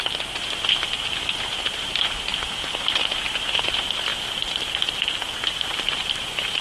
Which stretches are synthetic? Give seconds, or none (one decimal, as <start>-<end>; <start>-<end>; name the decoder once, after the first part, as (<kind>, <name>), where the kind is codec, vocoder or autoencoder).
none